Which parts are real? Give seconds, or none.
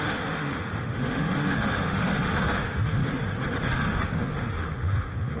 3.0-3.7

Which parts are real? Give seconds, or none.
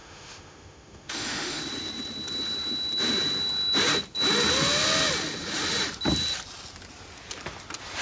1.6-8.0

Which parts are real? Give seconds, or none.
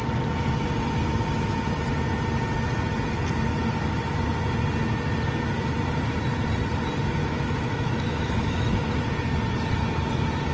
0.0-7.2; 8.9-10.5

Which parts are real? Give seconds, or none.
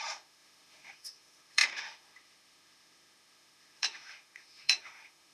none